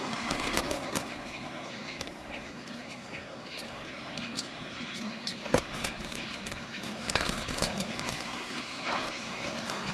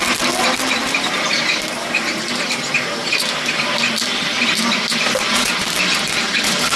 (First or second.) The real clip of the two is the second